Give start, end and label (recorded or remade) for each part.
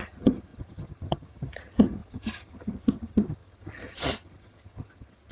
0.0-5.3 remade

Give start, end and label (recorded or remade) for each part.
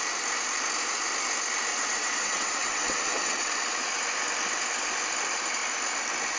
0.0-1.7 recorded; 1.7-3.9 remade; 3.9-6.4 recorded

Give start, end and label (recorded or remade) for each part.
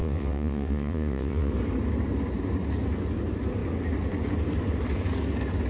0.0-1.5 remade; 1.5-5.7 recorded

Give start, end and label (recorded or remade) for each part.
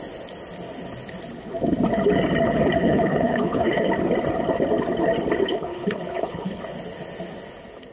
0.0-2.8 recorded; 2.8-3.9 remade; 3.9-5.4 recorded; 5.4-6.6 remade; 6.6-7.9 recorded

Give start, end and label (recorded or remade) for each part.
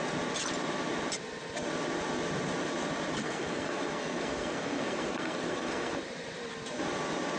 0.0-3.2 recorded; 3.2-6.0 remade; 6.0-7.4 recorded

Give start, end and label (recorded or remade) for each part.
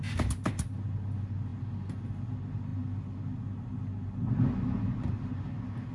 0.0-5.9 recorded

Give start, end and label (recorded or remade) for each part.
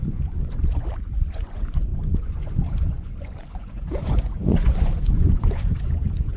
0.0-0.6 remade; 0.6-1.2 recorded; 1.2-6.4 remade